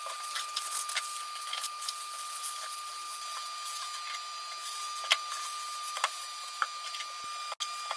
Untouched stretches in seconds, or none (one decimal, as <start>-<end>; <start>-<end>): 0.0-8.0